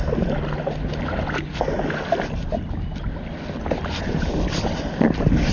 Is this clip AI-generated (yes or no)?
no